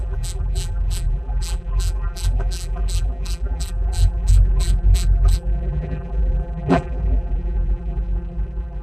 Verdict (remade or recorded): remade